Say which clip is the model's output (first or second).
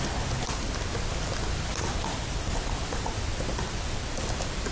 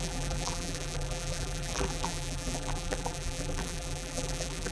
second